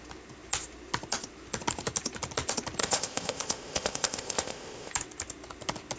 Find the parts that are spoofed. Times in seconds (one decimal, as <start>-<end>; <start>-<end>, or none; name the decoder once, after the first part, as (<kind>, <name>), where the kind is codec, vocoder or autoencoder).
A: 2.8-4.9 (codec, ZipCodec)